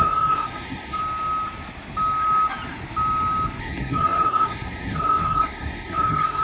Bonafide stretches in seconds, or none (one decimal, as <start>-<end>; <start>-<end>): 1.0-3.6